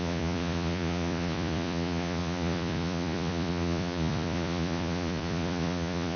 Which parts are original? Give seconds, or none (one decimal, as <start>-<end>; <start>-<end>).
none